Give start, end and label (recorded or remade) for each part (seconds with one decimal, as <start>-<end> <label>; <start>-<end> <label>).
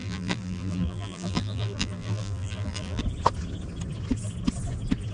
0.0-3.0 remade; 3.0-5.1 recorded